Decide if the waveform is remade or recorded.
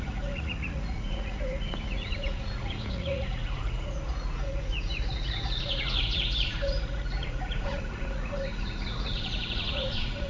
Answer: remade